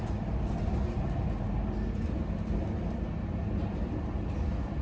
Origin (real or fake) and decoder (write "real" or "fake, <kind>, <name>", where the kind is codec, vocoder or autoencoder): real